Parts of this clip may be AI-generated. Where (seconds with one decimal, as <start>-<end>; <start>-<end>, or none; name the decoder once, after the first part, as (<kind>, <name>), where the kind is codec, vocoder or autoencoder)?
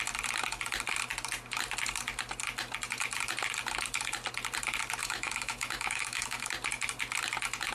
5.0-6.5 (autoencoder, DAC-VAE)